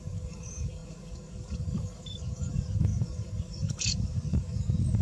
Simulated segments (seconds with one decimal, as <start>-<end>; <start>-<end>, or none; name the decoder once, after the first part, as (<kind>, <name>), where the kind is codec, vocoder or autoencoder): 0.0-5.0 (codec, DAC)